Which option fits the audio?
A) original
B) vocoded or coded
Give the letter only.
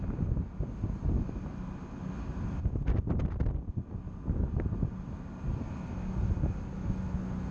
A